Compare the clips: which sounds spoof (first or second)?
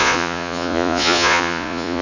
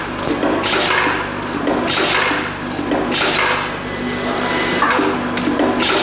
first